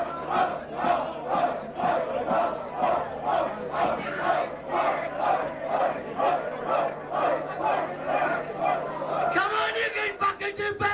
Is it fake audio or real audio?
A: real